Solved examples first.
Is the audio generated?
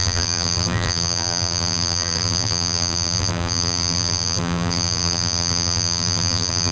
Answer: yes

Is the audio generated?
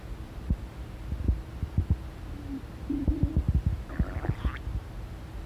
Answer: no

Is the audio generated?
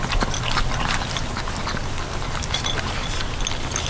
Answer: no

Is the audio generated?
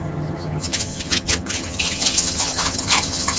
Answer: yes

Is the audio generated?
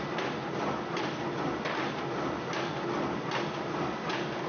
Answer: no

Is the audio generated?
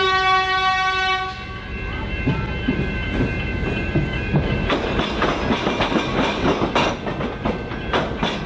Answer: no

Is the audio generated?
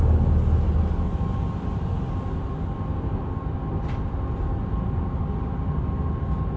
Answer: no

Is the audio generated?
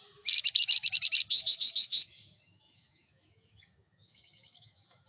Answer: yes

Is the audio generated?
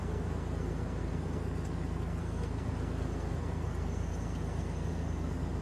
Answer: yes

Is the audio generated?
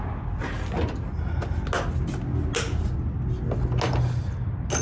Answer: no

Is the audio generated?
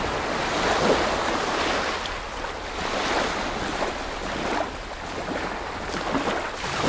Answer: no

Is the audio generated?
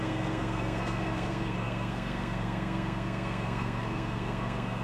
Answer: yes